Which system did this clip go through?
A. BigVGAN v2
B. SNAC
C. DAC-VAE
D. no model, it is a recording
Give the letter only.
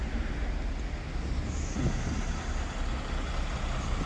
D